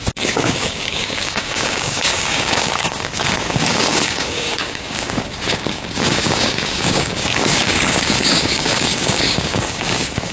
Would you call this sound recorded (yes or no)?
no